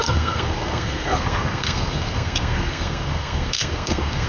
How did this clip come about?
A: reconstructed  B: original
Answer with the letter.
A